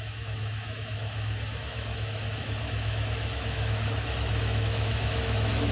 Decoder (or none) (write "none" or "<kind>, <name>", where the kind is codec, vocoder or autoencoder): autoencoder, DAC-VAE